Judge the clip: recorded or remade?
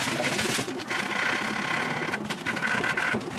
recorded